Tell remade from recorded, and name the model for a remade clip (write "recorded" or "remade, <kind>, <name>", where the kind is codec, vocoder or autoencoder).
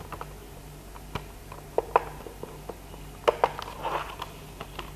recorded